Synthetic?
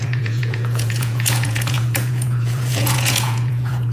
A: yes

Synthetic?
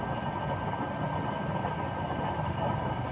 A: no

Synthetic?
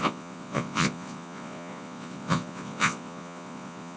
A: yes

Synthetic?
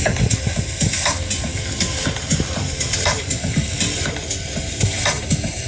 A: no